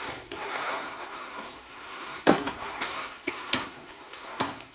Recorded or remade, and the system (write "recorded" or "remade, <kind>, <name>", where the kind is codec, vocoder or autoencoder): remade, codec, SNAC